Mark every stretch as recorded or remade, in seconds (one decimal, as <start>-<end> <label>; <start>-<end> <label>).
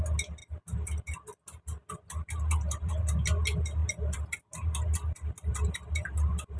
0.0-6.6 recorded